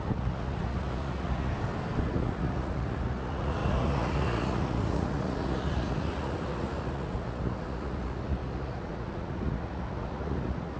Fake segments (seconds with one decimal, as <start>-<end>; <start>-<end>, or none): 0.0-1.5; 2.0-10.8